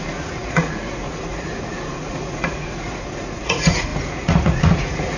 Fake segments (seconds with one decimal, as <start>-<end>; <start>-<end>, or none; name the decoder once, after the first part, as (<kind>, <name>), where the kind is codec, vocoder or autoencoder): 0.0-5.2 (vocoder, Vocos)